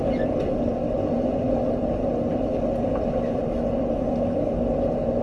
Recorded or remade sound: recorded